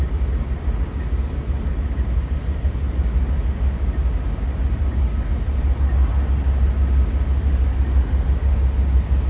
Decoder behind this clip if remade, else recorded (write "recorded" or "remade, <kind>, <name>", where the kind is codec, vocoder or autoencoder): recorded